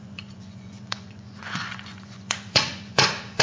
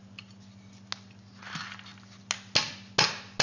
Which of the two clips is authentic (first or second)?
second